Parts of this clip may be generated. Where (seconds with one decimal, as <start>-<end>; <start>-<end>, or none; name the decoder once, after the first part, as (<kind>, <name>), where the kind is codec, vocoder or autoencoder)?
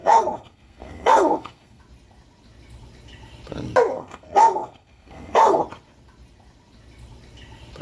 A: 0.0-1.8 (codec, SNAC); 3.9-5.6